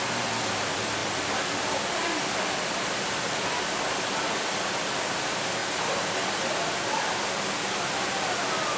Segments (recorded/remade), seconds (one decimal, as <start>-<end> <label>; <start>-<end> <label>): 0.0-8.8 recorded